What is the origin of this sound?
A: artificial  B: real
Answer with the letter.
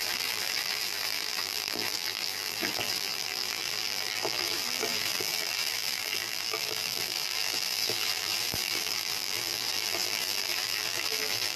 A